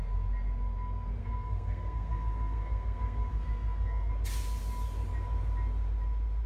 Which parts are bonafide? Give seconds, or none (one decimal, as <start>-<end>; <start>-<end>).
0.0-1.2; 4.1-6.5

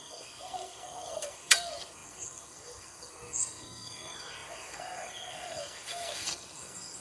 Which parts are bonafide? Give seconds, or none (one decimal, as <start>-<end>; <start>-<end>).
none

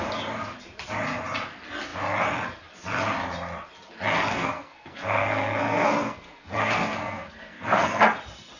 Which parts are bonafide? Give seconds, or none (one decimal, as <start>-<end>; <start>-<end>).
0.0-4.3; 8.0-8.6